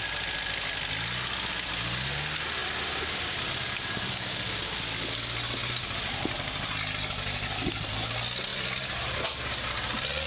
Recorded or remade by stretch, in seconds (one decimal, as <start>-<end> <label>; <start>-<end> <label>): 0.0-2.6 recorded; 2.6-4.1 remade; 4.1-8.5 recorded; 8.5-9.2 remade; 9.2-10.3 recorded